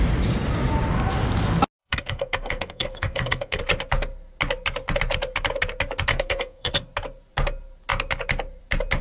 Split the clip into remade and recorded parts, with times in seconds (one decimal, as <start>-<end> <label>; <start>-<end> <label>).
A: 0.0-1.8 recorded; 1.8-3.6 remade; 3.6-6.1 recorded; 6.1-6.7 remade; 6.7-9.0 recorded